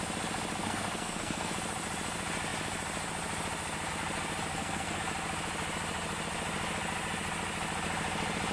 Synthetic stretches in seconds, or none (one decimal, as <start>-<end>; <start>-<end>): 0.6-1.5; 4.5-5.0